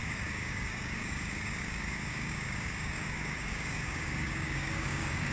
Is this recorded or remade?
remade